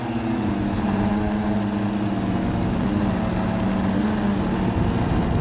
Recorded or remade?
recorded